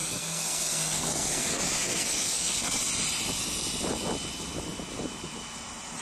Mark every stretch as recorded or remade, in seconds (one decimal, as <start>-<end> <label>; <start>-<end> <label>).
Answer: 0.0-2.8 remade; 2.8-6.0 recorded